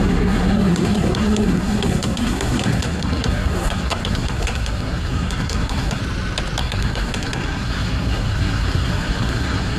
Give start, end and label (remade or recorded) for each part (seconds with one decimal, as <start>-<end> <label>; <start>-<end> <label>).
0.0-6.0 remade; 6.0-6.6 recorded; 6.6-9.8 remade